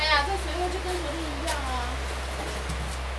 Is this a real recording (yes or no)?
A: yes